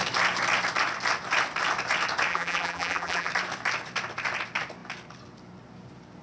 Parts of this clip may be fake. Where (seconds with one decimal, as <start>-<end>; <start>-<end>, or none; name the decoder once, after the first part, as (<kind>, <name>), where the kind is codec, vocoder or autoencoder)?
2.3-3.3 (vocoder, BigVGAN v2)